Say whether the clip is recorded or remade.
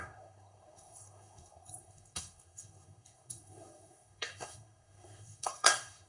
remade